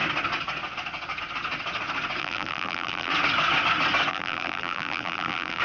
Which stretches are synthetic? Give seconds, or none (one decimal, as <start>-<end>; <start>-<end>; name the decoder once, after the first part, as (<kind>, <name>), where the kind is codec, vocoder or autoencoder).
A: 2.2-3.1 (vocoder, BigVGAN v2); 4.1-5.6